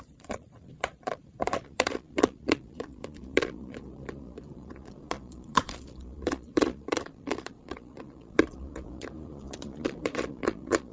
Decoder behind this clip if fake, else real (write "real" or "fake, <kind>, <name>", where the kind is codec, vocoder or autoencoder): fake, vocoder, Vocos